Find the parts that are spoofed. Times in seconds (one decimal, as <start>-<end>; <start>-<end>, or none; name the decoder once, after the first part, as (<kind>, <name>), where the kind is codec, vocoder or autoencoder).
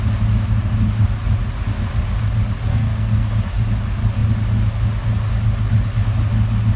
2.7-3.3 (codec, SNAC)